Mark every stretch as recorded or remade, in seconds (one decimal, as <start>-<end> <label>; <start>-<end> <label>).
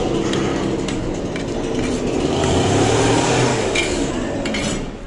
0.0-0.5 recorded; 0.5-1.2 remade; 1.2-3.5 recorded; 3.5-4.1 remade; 4.1-5.1 recorded